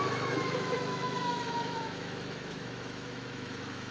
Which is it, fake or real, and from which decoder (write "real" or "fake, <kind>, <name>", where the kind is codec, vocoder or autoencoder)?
fake, autoencoder, DAC-VAE